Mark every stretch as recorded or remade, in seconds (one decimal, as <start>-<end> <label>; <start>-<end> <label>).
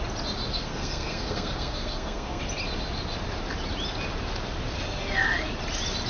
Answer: 0.0-0.5 recorded; 0.5-2.4 remade; 2.4-6.1 recorded